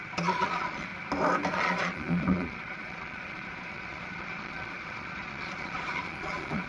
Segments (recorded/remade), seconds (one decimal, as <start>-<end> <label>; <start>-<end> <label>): 0.0-0.9 remade; 0.9-1.5 recorded; 1.5-6.7 remade